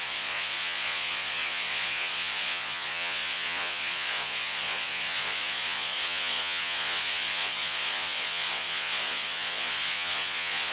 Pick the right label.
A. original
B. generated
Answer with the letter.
B